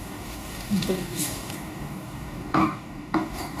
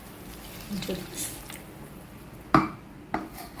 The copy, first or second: first